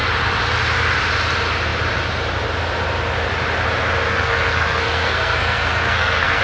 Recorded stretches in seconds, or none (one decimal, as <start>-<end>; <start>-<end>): 0.0-4.1